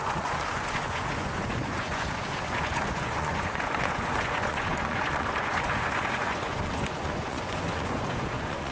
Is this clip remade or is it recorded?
remade